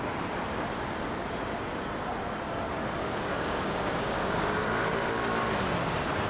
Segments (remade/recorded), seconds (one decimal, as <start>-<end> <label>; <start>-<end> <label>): 0.0-3.0 recorded; 3.0-4.4 remade; 4.4-6.3 recorded